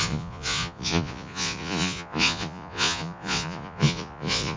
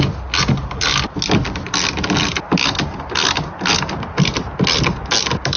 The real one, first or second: second